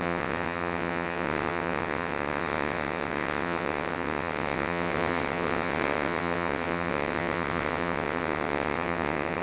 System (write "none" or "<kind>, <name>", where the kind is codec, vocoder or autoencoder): vocoder, WaveNeXt